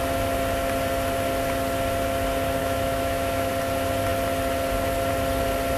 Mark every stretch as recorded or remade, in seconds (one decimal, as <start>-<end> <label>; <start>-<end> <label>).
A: 0.0-2.6 recorded; 2.6-3.5 remade; 3.5-5.8 recorded